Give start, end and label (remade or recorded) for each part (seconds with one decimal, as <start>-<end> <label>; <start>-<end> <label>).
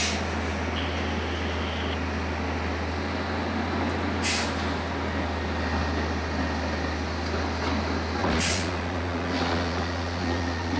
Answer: 0.0-8.2 recorded; 8.2-10.8 remade